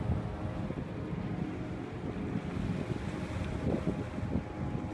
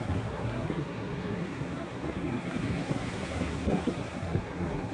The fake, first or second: second